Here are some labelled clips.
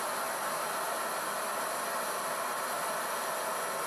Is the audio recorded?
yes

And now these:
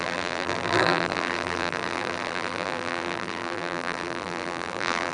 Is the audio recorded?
no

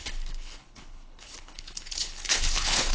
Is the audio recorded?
no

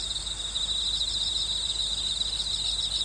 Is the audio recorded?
yes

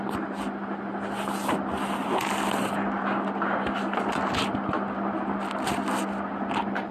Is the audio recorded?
yes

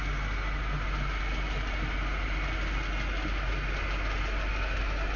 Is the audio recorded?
yes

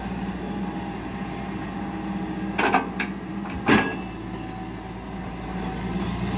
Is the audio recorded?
yes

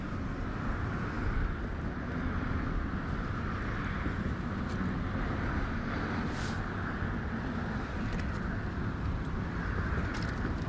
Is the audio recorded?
yes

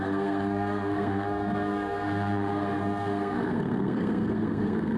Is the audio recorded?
no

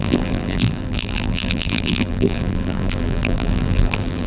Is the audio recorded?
no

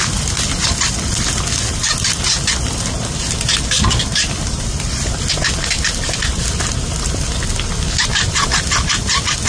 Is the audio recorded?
yes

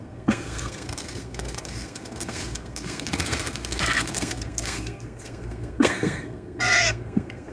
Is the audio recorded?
no